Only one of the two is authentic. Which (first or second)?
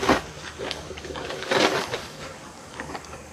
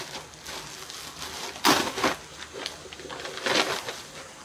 second